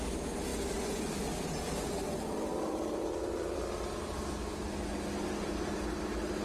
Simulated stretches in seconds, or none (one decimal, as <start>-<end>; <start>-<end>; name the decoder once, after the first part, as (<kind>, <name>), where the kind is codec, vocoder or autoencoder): 2.5-3.7 (vocoder, BigVGAN v2)